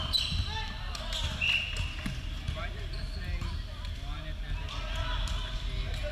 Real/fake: real